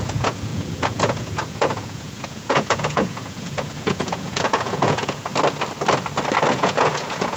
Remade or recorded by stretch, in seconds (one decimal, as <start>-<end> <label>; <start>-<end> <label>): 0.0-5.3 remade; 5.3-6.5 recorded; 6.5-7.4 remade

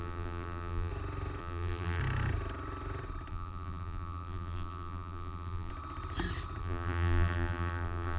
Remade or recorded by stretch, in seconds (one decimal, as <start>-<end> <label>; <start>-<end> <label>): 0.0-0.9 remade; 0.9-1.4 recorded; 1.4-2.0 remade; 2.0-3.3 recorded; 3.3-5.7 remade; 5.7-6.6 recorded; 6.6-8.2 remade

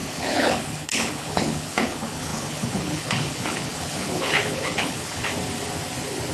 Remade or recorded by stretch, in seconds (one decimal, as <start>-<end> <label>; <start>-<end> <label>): 0.0-5.3 remade; 5.3-6.3 recorded

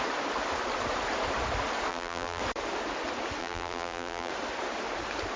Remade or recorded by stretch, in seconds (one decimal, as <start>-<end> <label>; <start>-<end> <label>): 0.0-1.9 recorded; 1.9-2.4 remade; 2.4-3.4 recorded; 3.4-4.3 remade; 4.3-5.4 recorded

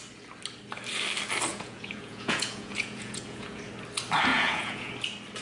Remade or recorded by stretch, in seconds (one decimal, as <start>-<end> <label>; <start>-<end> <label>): 0.0-1.5 recorded; 1.5-3.6 remade; 3.6-4.3 recorded; 4.3-4.9 remade; 4.9-5.4 recorded

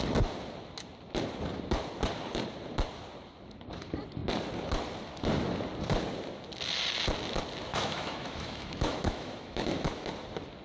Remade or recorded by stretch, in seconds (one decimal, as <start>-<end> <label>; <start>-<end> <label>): 0.0-7.7 recorded; 7.7-10.1 remade; 10.1-10.6 recorded

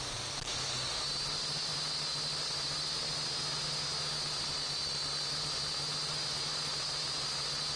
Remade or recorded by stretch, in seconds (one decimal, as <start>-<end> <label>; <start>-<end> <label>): 0.0-7.8 recorded